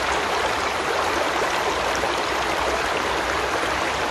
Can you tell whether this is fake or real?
real